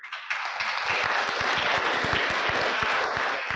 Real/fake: real